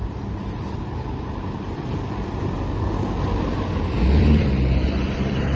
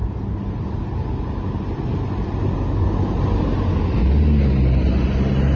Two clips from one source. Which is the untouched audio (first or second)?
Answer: second